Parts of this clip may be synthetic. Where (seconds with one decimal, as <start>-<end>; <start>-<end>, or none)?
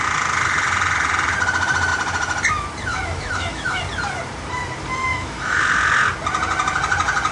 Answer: 2.9-3.8; 5.1-5.6